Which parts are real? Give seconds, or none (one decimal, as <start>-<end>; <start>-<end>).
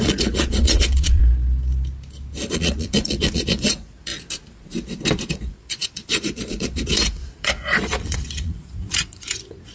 1.2-2.5; 4.1-5.3